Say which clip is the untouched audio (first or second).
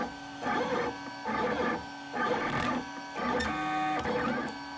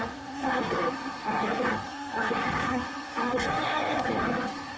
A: first